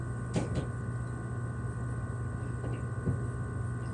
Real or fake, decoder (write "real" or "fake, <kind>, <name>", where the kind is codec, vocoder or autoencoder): real